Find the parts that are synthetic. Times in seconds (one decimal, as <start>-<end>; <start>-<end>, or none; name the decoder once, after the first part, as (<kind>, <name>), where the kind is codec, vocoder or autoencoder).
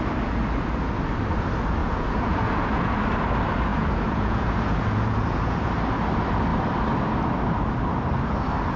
1.8-2.9 (vocoder, Vocos); 3.7-5.7